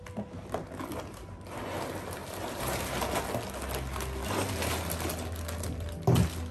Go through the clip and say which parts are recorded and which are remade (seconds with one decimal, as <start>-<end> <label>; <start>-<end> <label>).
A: 0.0-2.2 recorded; 2.2-3.0 remade; 3.0-6.5 recorded